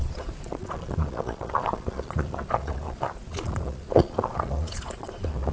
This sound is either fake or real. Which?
fake